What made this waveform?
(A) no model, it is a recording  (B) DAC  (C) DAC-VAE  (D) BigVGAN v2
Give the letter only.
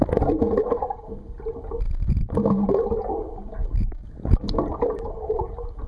A